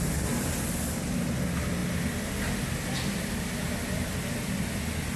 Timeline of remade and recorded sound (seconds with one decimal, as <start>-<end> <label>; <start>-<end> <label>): 0.0-5.2 recorded